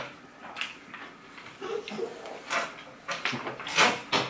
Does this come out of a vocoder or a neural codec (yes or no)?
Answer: no